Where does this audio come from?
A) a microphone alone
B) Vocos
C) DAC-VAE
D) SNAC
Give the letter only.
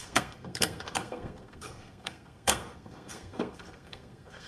D